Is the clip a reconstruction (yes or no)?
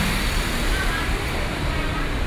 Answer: yes